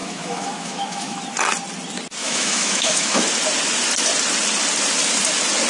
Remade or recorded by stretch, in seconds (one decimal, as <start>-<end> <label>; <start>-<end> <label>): 0.0-1.2 remade; 1.2-2.2 recorded; 2.2-3.2 remade; 3.2-5.7 recorded